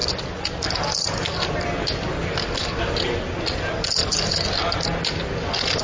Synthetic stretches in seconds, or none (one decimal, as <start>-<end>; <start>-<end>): none